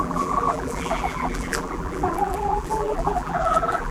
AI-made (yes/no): yes